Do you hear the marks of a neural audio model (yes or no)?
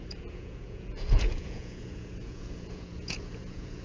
yes